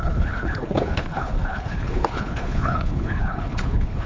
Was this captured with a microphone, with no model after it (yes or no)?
no